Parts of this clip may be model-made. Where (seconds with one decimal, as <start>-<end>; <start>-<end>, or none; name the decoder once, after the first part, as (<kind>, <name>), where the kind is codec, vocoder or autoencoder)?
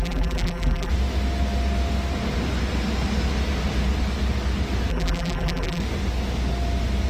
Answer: 0.0-0.9 (vocoder, BigVGAN v2); 4.9-5.8